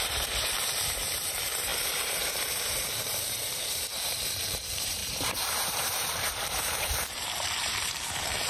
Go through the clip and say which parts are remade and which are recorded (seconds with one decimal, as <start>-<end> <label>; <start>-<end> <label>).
0.0-8.5 remade